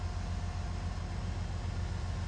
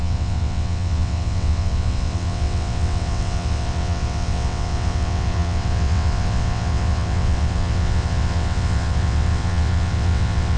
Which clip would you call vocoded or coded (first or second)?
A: second